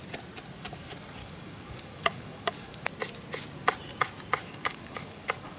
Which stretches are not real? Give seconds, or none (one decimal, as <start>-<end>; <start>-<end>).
1.2-2.8; 4.4-5.6